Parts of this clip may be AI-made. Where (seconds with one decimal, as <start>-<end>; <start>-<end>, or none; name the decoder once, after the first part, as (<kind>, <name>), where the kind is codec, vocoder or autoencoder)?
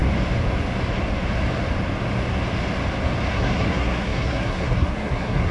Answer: 3.3-5.5 (codec, SNAC)